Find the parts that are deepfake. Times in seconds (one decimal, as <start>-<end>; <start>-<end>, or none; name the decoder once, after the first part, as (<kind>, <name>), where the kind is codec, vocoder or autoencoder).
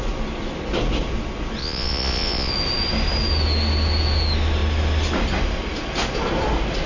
1.6-2.5 (vocoder, Vocos)